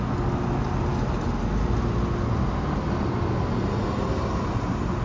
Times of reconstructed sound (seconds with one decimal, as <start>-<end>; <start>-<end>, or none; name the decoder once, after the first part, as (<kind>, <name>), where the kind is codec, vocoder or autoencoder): none